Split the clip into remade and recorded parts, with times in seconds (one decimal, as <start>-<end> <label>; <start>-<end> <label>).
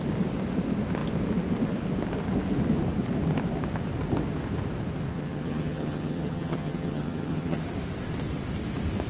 0.0-5.1 recorded; 5.1-7.6 remade; 7.6-9.1 recorded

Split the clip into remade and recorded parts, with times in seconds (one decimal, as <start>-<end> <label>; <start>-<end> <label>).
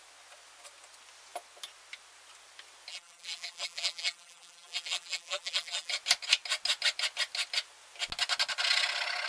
0.0-2.9 recorded; 2.9-5.9 remade; 5.9-9.3 recorded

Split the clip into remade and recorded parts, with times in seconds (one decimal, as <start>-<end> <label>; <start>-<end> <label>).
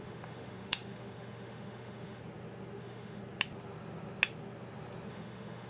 0.0-2.2 remade; 2.2-2.8 recorded; 2.8-3.2 remade; 3.2-5.1 recorded; 5.1-5.7 remade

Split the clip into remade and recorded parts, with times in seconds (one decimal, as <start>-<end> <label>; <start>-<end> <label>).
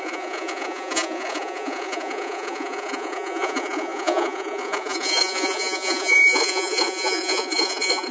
0.0-8.1 remade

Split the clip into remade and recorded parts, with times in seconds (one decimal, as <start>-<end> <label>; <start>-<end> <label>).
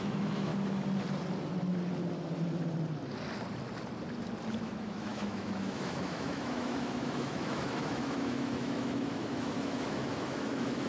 0.0-0.5 remade; 0.5-4.6 recorded; 4.6-10.9 remade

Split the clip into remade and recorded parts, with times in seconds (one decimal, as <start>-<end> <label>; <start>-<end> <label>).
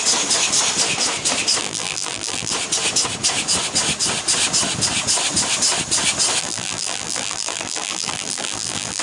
0.0-1.6 recorded; 1.6-2.5 remade; 2.5-6.4 recorded; 6.4-9.0 remade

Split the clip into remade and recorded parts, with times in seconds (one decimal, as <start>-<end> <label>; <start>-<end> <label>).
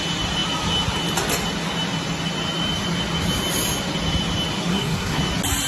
0.0-4.7 recorded; 4.7-5.2 remade; 5.2-5.7 recorded